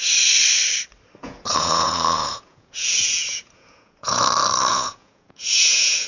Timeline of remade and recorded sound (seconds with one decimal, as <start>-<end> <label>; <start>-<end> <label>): 0.0-1.2 recorded; 1.2-4.2 remade; 4.2-4.7 recorded; 4.7-6.1 remade